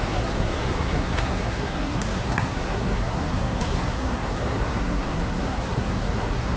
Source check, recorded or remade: remade